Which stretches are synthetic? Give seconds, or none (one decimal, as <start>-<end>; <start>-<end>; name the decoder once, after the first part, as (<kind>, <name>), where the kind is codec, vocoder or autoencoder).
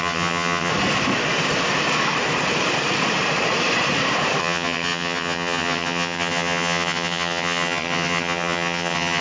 0.0-0.7 (vocoder, HiFi-GAN); 4.4-9.2